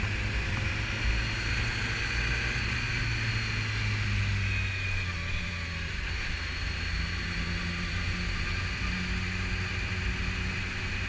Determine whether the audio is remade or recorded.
recorded